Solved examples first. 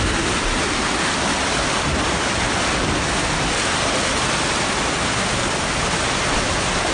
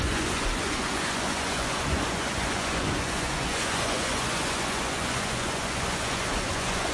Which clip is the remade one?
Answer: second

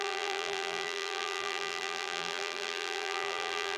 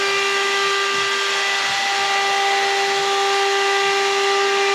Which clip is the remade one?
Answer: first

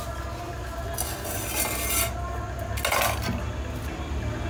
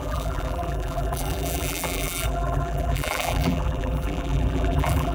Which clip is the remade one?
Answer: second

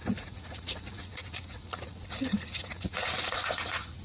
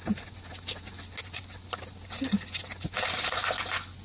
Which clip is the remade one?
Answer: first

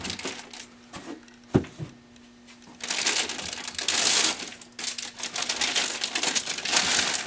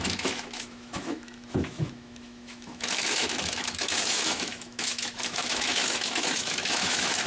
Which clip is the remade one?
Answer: second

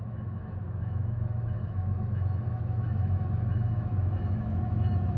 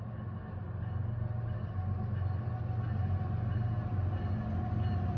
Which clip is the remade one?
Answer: first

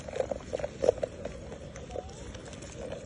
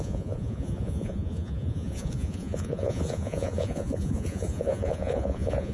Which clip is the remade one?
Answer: second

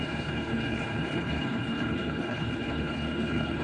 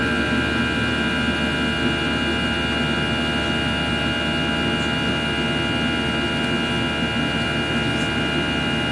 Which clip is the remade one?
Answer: first